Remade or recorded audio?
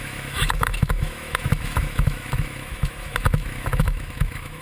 remade